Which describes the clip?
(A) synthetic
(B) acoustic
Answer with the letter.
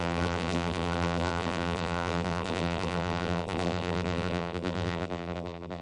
A